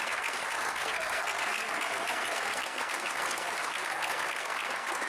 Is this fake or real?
fake